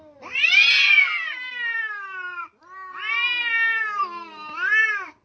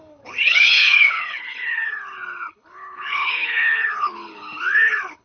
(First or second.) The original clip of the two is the first